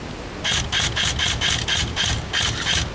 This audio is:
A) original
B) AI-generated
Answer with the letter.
A